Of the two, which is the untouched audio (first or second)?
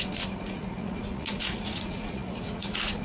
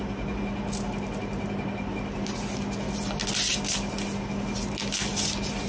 second